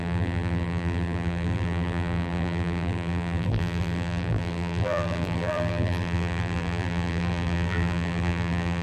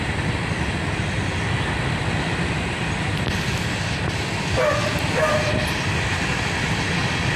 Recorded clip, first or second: second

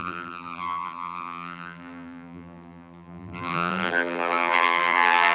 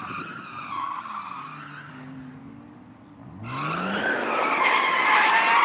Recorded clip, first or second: second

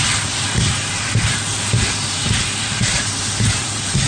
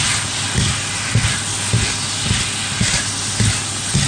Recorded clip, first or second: second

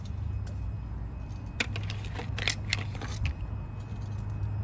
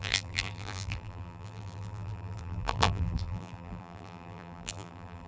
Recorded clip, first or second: first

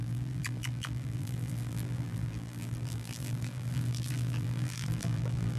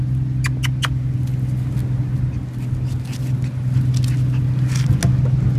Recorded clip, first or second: second